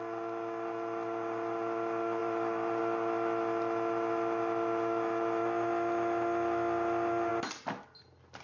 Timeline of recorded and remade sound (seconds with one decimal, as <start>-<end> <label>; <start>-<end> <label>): 0.0-2.2 recorded; 2.2-2.8 remade; 2.8-8.4 recorded